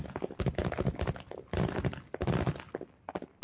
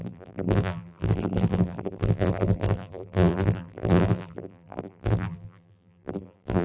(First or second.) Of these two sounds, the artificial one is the second